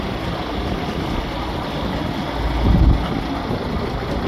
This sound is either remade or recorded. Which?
recorded